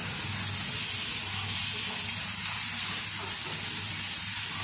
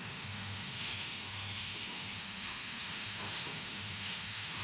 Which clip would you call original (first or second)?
first